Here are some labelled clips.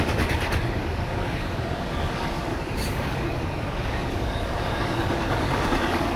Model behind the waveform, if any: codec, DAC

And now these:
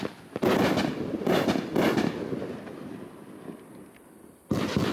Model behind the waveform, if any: none